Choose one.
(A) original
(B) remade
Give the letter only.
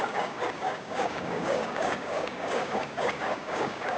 B